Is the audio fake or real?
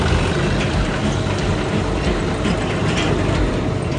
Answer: real